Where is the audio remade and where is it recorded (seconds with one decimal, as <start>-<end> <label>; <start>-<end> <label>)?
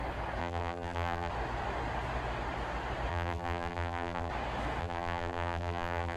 0.0-0.4 recorded; 0.4-1.3 remade; 1.3-3.1 recorded; 3.1-4.3 remade; 4.3-4.8 recorded; 4.8-6.2 remade